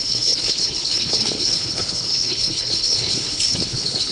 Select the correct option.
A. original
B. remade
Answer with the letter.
B